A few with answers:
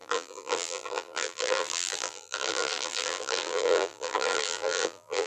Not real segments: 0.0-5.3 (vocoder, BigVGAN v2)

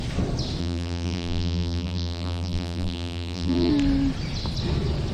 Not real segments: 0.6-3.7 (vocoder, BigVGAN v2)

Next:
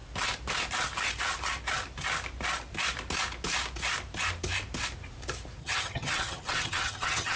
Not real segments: 5.6-7.4 (vocoder, HiFi-GAN)

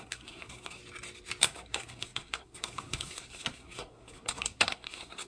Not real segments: 0.0-0.8 (codec, SNAC); 1.4-5.3

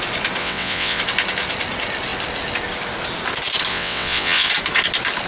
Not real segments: 0.4-1.0 (vocoder, WaveNeXt); 3.7-4.5

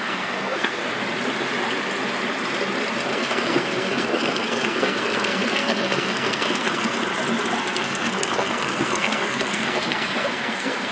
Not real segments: 0.0-0.8 (codec, SNAC); 3.1-7.0; 7.6-10.9

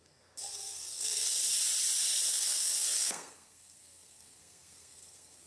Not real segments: 0.0-1.4 (codec, SNAC); 2.3-5.5

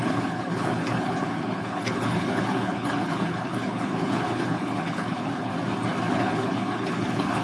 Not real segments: 0.0-5.5 (codec, HILCodec); 6.1-7.4